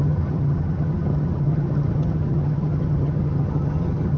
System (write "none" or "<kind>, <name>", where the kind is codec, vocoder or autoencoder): vocoder, HiFi-GAN